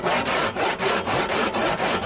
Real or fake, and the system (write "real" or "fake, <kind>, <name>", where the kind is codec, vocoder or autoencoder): real